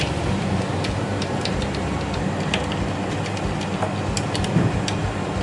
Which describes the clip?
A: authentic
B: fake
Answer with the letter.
A